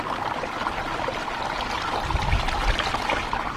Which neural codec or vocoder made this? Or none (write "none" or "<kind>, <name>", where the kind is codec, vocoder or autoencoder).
none